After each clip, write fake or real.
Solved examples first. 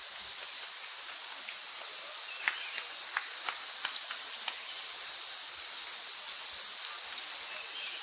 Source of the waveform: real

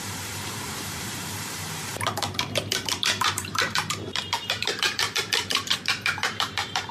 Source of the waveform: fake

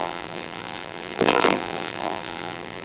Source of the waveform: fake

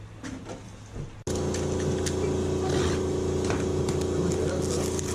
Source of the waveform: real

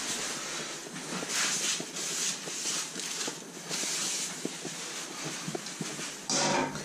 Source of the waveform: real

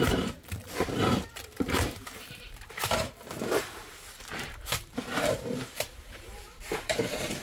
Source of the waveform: fake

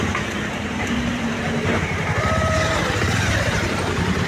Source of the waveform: fake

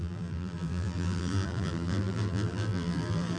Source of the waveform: fake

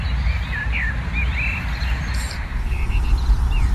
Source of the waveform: real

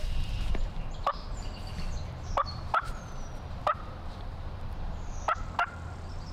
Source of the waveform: fake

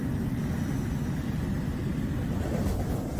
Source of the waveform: fake